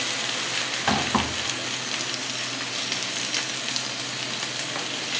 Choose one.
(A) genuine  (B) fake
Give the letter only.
A